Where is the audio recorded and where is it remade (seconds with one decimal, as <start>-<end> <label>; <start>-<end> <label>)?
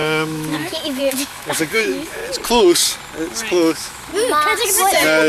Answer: 0.0-2.2 remade; 2.2-3.5 recorded; 3.5-4.1 remade; 4.1-5.3 recorded